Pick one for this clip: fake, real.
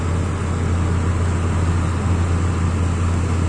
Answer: real